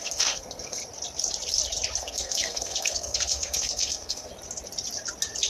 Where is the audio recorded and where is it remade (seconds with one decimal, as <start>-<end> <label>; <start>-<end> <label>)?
0.0-0.8 remade; 0.8-2.0 recorded; 2.0-4.3 remade; 4.3-5.5 recorded